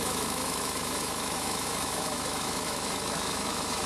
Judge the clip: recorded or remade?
remade